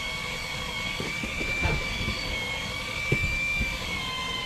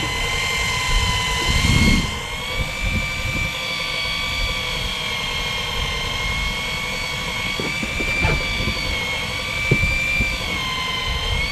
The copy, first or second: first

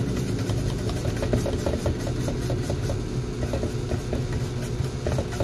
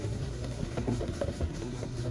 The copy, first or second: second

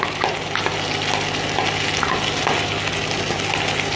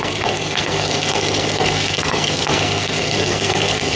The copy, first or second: second